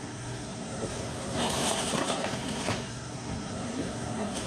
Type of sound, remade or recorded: remade